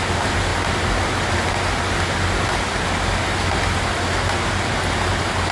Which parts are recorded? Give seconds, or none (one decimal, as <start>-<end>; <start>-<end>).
0.0-5.5